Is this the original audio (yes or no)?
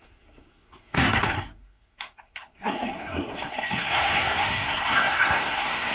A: no